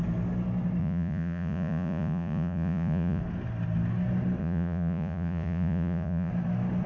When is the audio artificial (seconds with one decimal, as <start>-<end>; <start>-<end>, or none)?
0.8-3.2; 4.4-6.3